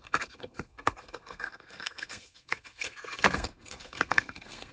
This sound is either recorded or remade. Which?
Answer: remade